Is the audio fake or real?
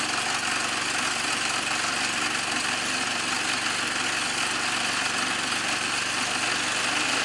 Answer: real